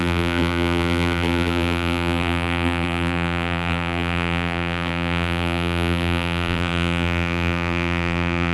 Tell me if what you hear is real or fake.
fake